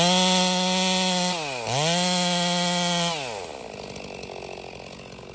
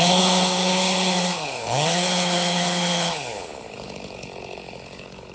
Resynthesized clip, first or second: second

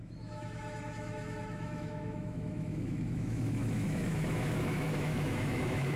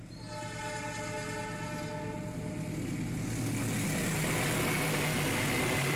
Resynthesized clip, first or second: first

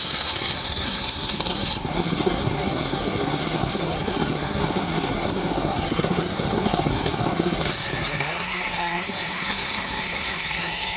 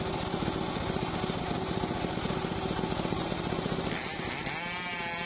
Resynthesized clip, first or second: first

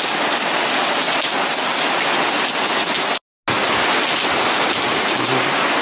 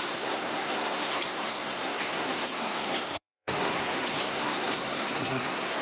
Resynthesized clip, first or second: second